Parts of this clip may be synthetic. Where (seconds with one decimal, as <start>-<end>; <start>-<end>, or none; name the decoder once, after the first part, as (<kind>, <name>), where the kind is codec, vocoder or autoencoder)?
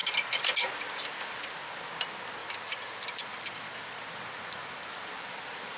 2.4-3.7 (vocoder, BigVGAN v2)